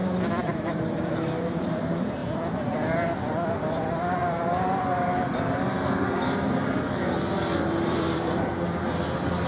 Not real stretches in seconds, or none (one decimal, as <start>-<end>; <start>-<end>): 0.0-2.2; 3.8-9.5